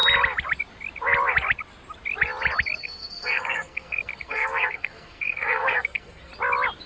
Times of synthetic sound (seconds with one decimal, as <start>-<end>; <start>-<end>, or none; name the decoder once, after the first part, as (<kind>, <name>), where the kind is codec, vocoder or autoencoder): 2.8-6.3 (codec, SNAC)